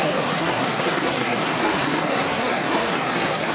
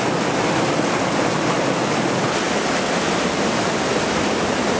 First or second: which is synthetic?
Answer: first